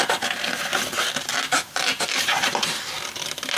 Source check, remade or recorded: recorded